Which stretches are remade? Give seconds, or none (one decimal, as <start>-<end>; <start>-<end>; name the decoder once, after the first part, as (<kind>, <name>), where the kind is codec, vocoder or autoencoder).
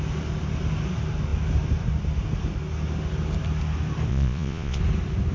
4.1-4.8 (vocoder, Vocos)